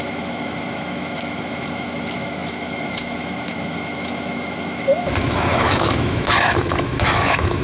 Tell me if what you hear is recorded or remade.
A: remade